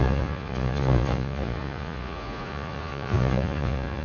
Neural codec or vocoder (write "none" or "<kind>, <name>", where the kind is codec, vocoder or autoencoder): vocoder, Vocos